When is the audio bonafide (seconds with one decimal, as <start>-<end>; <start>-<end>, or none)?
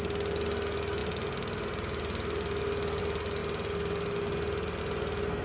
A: 0.0-5.4